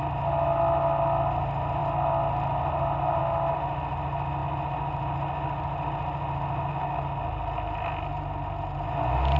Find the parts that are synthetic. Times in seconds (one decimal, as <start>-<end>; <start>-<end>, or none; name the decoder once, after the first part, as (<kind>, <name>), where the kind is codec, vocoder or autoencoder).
none